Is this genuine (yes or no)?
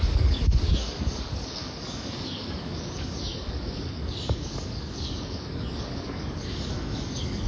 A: no